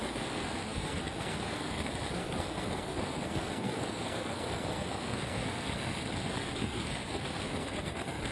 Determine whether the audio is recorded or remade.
remade